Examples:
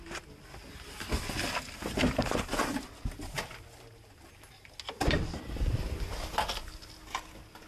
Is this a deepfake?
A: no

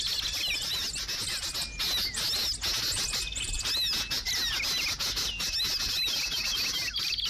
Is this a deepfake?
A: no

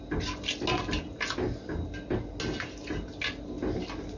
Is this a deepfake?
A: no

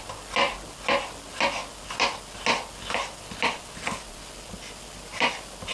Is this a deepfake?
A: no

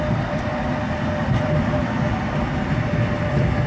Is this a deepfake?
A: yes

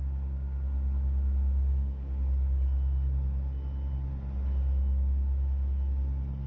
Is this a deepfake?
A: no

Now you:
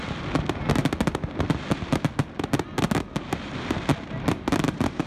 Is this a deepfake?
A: no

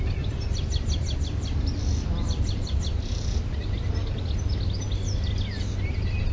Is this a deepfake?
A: no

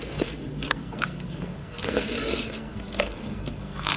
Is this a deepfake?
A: yes